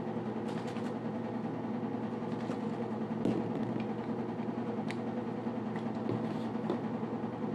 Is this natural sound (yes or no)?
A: yes